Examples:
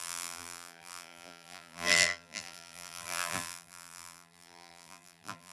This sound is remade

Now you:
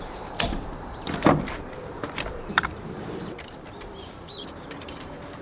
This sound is remade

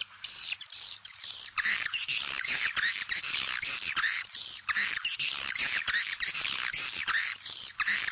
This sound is remade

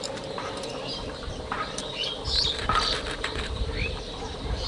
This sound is remade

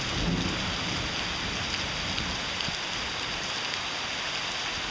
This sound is recorded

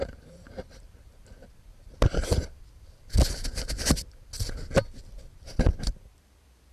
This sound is recorded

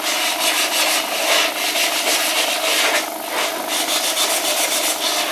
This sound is recorded